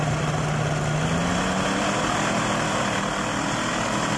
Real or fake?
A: real